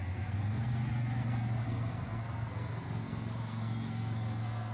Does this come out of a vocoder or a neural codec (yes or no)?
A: yes